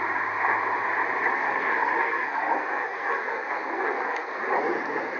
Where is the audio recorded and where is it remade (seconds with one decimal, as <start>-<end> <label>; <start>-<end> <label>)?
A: 0.0-1.3 recorded; 1.3-4.4 remade; 4.4-5.2 recorded